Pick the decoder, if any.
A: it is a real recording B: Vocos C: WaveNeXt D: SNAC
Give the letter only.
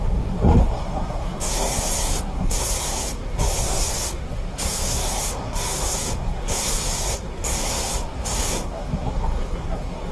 D